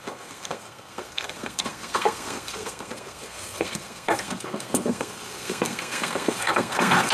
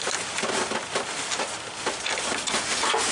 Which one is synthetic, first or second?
first